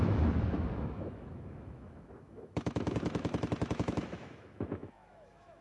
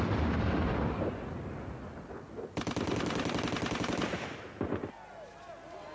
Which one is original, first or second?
second